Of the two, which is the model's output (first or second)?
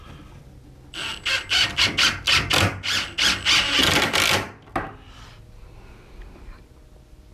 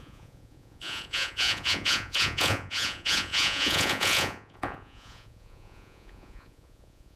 second